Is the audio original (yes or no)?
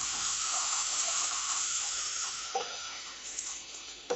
no